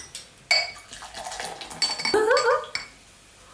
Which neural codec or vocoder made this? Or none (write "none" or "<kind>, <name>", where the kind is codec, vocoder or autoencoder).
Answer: none